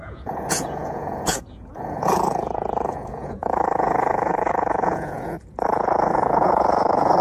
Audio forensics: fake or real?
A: fake